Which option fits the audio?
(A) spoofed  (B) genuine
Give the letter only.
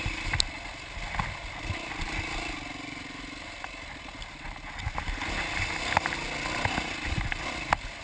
B